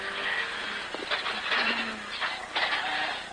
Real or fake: real